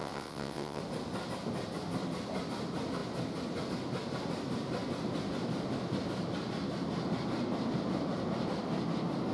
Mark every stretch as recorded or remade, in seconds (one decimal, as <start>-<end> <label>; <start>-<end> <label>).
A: 0.0-0.8 remade; 0.8-9.3 recorded